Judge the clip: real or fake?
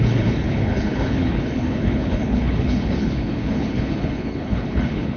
fake